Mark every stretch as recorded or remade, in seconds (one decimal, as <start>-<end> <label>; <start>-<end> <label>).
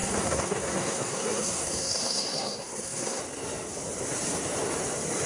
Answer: 0.0-3.2 remade; 3.2-5.3 recorded